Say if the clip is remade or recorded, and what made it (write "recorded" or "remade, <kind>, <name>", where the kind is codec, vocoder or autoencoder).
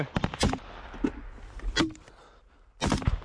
recorded